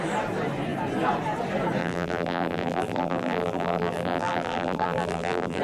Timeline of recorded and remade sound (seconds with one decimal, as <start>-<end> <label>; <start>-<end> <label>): 0.0-1.8 recorded; 1.8-5.6 remade